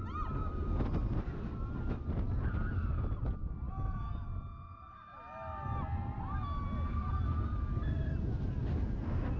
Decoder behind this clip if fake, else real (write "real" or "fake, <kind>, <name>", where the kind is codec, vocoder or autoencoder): real